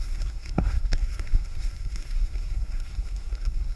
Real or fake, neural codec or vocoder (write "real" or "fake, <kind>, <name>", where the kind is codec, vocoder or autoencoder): fake, codec, SNAC